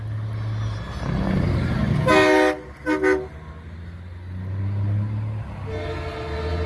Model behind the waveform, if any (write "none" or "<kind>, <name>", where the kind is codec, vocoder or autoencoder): none